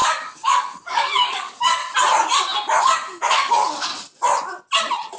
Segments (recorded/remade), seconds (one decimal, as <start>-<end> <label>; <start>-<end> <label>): 0.0-1.8 remade; 1.8-2.8 recorded; 2.8-3.9 remade; 3.9-5.2 recorded

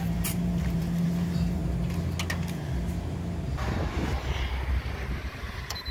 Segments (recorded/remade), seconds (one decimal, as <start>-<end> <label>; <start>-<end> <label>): 0.0-1.6 remade; 1.6-4.7 recorded; 4.7-5.9 remade

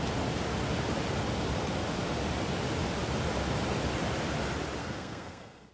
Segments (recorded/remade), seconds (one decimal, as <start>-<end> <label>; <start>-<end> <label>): 0.0-4.8 recorded; 4.8-5.7 remade